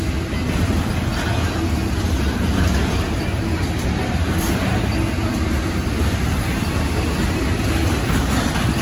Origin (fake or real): real